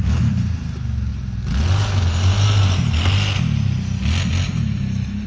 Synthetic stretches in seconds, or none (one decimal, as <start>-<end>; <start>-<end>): none